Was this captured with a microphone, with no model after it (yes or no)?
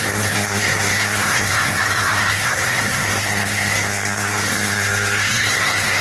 no